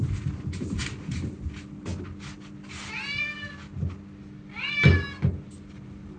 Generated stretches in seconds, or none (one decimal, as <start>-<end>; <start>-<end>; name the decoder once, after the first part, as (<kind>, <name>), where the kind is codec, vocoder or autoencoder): none